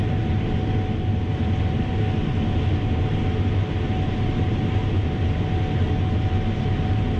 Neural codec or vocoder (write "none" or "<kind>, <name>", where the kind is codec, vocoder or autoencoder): none